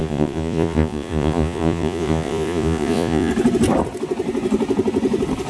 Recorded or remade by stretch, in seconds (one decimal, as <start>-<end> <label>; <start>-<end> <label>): 0.0-3.3 remade; 3.3-5.5 recorded